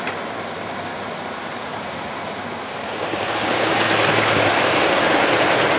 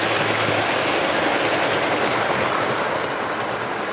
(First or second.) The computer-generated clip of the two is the first